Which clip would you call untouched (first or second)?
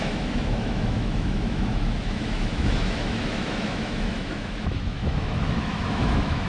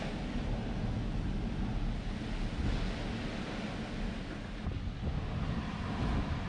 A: second